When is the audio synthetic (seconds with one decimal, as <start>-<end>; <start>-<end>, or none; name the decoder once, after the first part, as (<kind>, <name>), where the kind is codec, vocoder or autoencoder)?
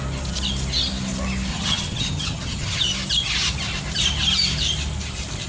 1.5-2.8 (vocoder, HiFi-GAN)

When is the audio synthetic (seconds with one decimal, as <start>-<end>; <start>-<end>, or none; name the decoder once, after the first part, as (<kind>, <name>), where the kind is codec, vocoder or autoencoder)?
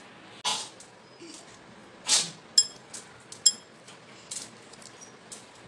none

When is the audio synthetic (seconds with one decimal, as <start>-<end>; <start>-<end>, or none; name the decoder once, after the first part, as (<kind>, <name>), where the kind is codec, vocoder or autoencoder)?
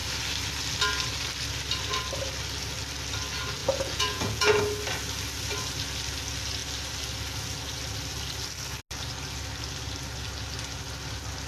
3.6-4.6 (vocoder, Vocos)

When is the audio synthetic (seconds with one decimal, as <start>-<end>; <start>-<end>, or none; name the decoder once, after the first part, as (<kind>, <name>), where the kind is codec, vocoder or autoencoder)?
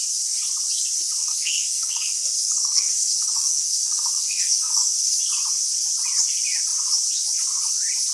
1.2-5.2 (codec, SNAC)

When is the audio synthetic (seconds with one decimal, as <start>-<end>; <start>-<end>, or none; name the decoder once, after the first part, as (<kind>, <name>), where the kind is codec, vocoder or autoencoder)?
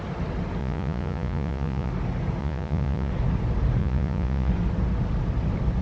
0.6-1.9 (vocoder, Vocos); 2.4-3.1; 3.8-4.5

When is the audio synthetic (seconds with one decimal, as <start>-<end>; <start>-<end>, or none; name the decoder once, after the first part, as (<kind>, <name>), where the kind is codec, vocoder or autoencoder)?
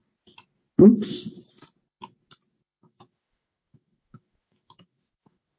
2.8-5.6 (autoencoder, DAC-VAE)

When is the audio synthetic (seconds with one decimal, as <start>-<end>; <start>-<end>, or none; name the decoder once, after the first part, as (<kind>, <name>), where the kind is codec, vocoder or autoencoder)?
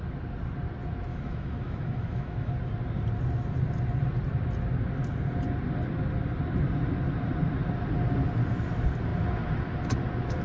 1.1-2.5 (autoencoder, DAC-VAE)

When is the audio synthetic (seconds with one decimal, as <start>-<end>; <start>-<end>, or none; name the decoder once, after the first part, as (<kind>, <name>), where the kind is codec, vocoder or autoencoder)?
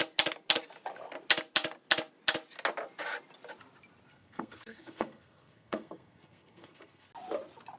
4.1-7.1 (codec, SNAC)